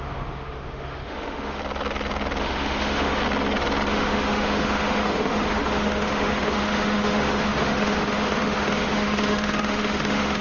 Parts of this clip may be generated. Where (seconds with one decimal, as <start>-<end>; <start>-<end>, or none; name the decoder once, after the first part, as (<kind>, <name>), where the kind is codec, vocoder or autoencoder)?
0.0-1.6 (autoencoder, DAC-VAE); 2.4-3.2; 3.9-10.4